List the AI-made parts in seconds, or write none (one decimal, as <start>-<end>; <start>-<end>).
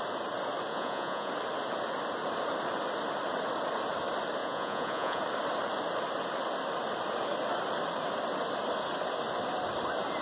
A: 0.7-1.3; 4.4-5.2